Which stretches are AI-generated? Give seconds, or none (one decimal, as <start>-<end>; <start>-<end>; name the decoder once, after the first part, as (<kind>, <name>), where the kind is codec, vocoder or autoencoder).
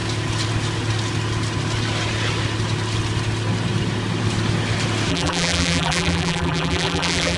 5.1-7.4 (vocoder, BigVGAN v2)